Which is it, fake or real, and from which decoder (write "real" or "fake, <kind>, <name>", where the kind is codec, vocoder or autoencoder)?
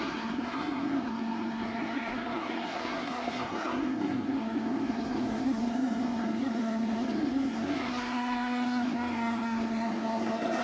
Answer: fake, codec, SNAC